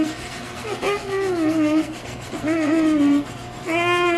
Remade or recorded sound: remade